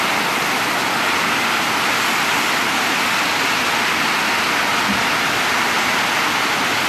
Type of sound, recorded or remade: recorded